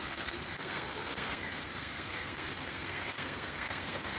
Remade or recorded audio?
remade